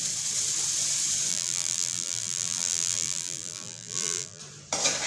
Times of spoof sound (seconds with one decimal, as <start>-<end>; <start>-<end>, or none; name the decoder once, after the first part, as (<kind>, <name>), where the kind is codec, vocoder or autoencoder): 1.3-4.4 (vocoder, BigVGAN v2)